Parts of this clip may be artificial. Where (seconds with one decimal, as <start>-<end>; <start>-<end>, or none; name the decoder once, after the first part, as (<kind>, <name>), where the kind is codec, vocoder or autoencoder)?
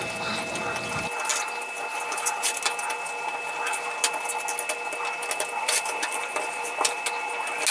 1.3-2.6 (vocoder, BigVGAN v2); 5.6-7.0